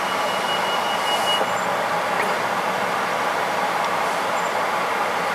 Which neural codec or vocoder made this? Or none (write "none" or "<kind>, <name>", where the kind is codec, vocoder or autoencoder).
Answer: none